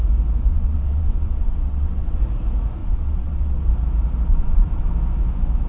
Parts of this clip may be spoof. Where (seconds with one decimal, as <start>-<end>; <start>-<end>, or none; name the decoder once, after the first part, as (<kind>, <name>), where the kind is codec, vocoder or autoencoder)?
0.5-2.2 (vocoder, WaveNeXt); 2.8-3.7; 4.3-4.9